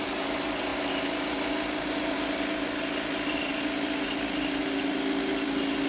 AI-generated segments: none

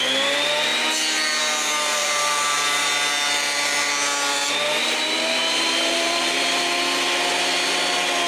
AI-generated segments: 1.9-2.9 (vocoder, BigVGAN v2); 4.8-6.6

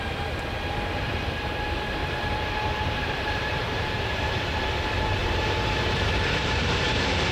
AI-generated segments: 2.0-4.4 (vocoder, BigVGAN v2); 5.2-7.3

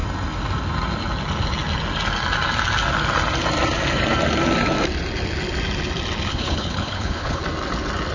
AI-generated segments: 6.3-7.4 (codec, HILCodec)

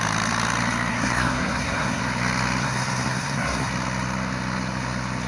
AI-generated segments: 0.9-2.0 (codec, SNAC); 2.6-3.7

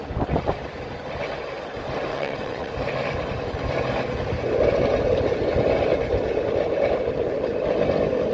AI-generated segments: 2.1-2.7 (vocoder, WaveNeXt)

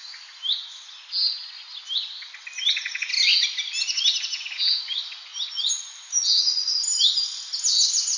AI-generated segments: none

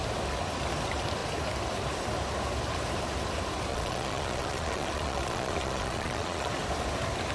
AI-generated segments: 3.7-6.5 (vocoder, Vocos)